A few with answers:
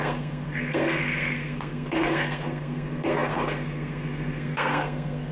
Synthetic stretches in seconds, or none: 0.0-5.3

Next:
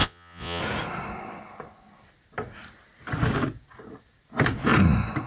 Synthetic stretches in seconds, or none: 0.0-0.6

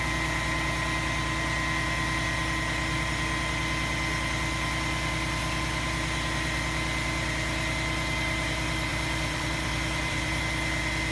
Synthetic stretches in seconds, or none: 8.9-10.4

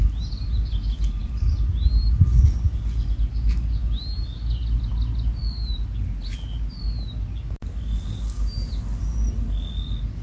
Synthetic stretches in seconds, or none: none

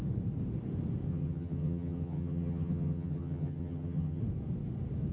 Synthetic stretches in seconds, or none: 1.1-4.2